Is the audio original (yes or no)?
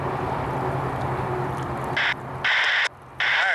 yes